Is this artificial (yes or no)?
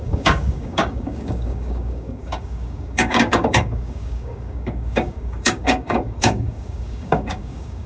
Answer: yes